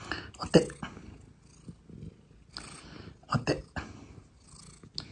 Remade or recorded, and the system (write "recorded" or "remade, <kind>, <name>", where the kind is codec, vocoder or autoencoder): recorded